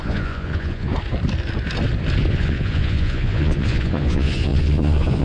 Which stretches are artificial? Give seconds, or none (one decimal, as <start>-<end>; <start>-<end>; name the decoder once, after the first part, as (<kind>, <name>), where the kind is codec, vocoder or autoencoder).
0.0-0.9 (vocoder, Vocos); 2.3-5.2

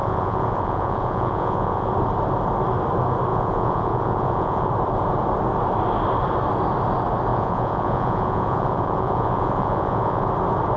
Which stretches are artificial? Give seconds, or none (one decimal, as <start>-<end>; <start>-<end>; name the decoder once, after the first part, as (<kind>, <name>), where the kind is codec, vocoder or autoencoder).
0.0-1.9 (vocoder, Vocos); 3.3-4.7; 7.3-10.3

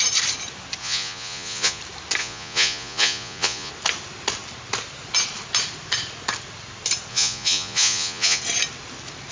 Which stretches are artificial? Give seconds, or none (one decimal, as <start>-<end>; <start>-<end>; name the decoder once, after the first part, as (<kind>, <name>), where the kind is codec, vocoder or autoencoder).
0.8-1.8 (vocoder, Vocos); 2.2-3.7; 7.1-8.4